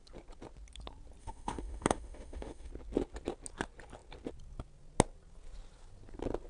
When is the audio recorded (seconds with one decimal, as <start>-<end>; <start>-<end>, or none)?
0.0-1.2; 2.7-6.5